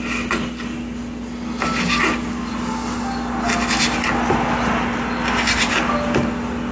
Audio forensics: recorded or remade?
recorded